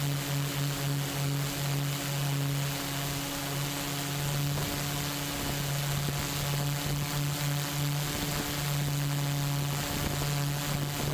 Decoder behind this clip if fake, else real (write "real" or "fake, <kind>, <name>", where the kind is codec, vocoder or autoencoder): real